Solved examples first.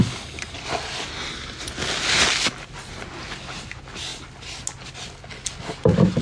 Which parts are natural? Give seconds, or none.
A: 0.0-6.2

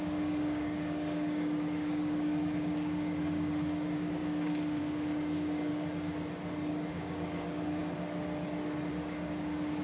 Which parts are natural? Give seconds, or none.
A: 5.7-6.9; 7.8-8.9

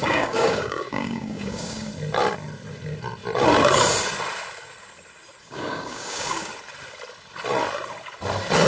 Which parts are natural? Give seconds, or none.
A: 1.9-5.4; 6.5-8.7

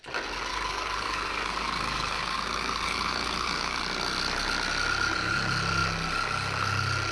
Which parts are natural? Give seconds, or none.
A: 0.0-0.5; 3.8-7.1

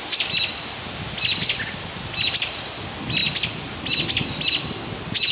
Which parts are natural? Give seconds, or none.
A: 0.0-5.3